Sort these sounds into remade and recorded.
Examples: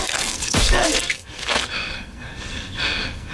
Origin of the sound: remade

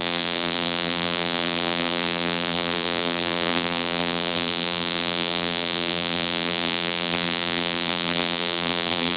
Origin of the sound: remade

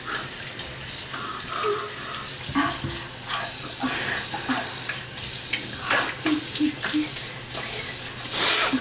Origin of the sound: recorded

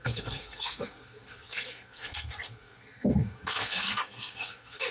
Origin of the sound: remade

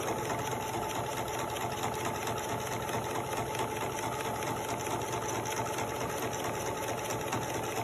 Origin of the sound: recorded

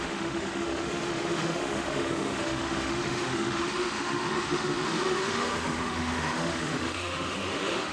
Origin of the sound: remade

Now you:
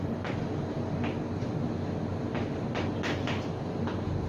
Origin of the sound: recorded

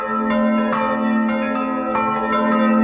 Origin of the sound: recorded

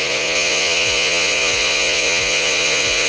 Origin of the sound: remade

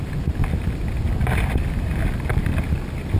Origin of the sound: remade